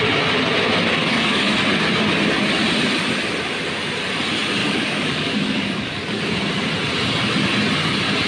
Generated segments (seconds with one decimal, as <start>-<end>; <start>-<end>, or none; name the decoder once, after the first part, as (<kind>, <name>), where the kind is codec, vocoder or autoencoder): 1.0-1.5 (codec, DAC); 4.6-6.2